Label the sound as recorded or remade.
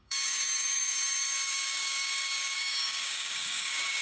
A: remade